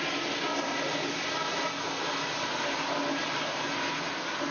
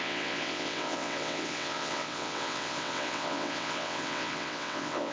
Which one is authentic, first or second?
first